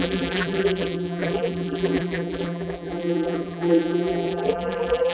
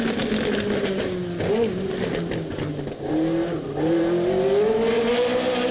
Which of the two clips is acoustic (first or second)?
second